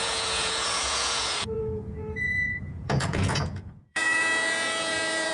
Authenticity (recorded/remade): remade